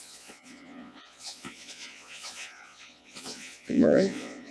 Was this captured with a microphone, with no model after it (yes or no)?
no